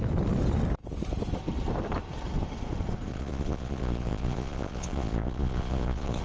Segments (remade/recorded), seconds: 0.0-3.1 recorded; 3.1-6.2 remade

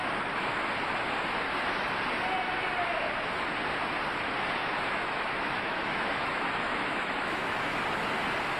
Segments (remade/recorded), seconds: 0.0-4.6 recorded; 4.6-7.8 remade; 7.8-8.6 recorded

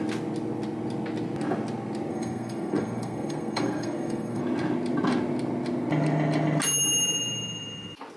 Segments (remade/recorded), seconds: 0.0-2.1 recorded; 2.1-4.4 remade; 4.4-8.2 recorded

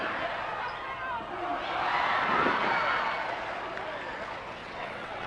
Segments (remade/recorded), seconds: 0.0-4.6 recorded; 4.6-5.3 remade

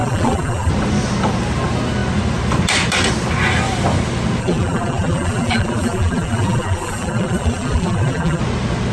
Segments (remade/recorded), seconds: 0.0-0.7 remade; 0.7-4.4 recorded; 4.4-8.4 remade; 8.4-8.9 recorded

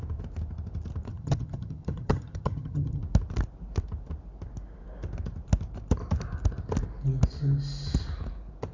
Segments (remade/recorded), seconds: 0.0-1.1 recorded; 1.1-3.0 remade; 3.0-8.7 recorded

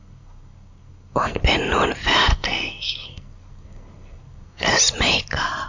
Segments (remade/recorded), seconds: 0.0-1.4 remade; 1.4-2.3 recorded; 2.3-4.7 remade; 4.7-5.7 recorded

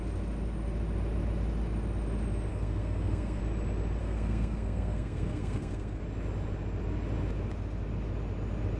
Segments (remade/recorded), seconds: 0.0-2.5 recorded; 2.5-3.4 remade; 3.4-4.0 recorded; 4.0-6.0 remade; 6.0-8.8 recorded